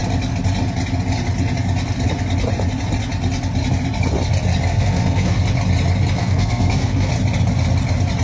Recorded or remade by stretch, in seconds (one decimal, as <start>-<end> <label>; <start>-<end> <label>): 0.0-4.7 recorded; 4.7-5.4 remade; 5.4-6.2 recorded; 6.2-7.1 remade; 7.1-8.2 recorded